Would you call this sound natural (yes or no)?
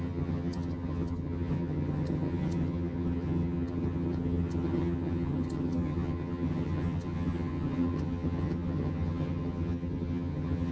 no